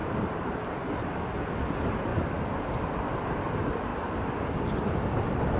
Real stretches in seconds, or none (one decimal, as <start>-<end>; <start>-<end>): 1.4-5.6